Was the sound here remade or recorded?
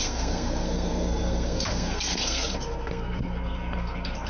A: remade